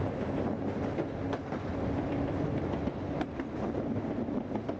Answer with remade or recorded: recorded